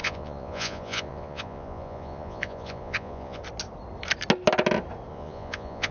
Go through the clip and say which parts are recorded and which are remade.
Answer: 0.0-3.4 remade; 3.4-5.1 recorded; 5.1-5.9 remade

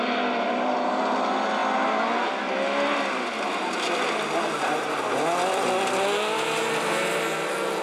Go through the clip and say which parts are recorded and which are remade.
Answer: 0.0-7.8 recorded

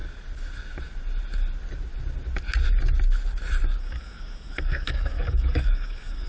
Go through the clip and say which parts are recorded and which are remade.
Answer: 0.0-3.8 recorded; 3.8-6.3 remade

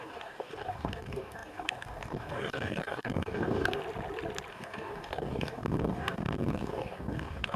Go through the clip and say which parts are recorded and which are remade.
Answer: 0.0-3.8 remade; 3.8-4.5 recorded; 4.5-7.6 remade

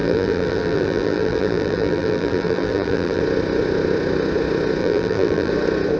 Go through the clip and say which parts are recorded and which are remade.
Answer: 0.0-3.2 remade; 3.2-4.8 recorded; 4.8-5.5 remade; 5.5-6.0 recorded

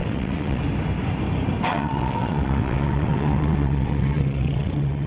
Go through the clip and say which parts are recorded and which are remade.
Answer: 0.0-0.6 remade; 0.6-1.7 recorded; 1.7-5.1 remade